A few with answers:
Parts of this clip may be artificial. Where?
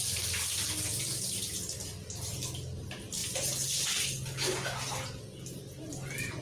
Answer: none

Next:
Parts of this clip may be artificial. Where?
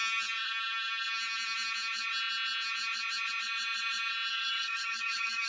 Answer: 4.3-5.5 (codec, DAC)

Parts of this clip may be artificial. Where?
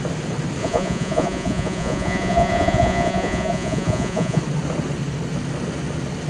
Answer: 0.6-4.4 (vocoder, Vocos)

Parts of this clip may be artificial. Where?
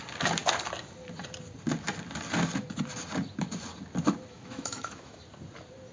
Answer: 4.3-5.2 (autoencoder, DAC-VAE)